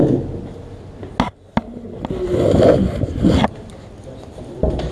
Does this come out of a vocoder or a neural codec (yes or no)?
no